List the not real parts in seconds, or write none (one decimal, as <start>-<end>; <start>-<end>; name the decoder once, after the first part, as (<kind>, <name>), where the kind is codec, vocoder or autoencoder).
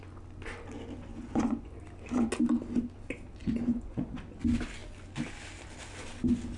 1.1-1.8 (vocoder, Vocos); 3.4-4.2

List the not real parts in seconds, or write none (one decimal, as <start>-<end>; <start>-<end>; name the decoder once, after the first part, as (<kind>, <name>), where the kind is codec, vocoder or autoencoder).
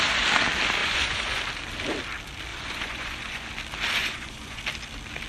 0.8-1.4 (vocoder, Vocos); 2.5-3.5; 4.0-4.6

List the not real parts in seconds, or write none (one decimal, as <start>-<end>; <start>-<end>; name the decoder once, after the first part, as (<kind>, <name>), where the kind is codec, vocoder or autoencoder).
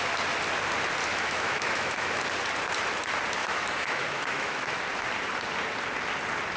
1.0-2.3 (autoencoder, DAC-VAE); 3.4-4.8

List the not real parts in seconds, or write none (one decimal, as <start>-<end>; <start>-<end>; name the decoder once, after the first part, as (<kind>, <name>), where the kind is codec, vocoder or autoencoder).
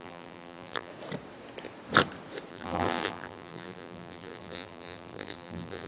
0.0-0.9 (vocoder, BigVGAN v2); 2.5-5.9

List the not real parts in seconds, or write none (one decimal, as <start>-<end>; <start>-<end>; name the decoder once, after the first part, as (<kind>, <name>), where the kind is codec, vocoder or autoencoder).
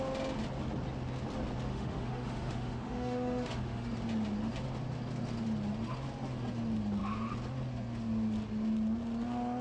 1.7-3.9 (autoencoder, DAC-VAE)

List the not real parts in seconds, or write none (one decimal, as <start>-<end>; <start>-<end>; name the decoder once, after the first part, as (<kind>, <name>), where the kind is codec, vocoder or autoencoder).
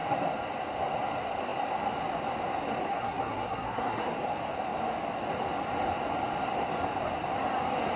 2.9-4.1 (codec, SNAC)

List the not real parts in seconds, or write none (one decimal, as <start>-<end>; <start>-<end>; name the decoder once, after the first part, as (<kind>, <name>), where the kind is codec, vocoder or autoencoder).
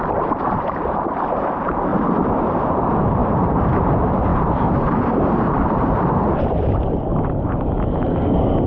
0.0-1.9 (vocoder, BigVGAN v2); 2.5-7.1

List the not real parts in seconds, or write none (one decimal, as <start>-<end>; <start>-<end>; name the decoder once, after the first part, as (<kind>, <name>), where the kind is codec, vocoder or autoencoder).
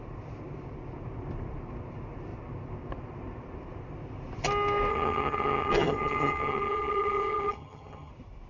4.9-8.1 (vocoder, HiFi-GAN)